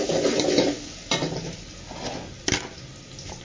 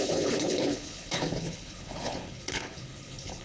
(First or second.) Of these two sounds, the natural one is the first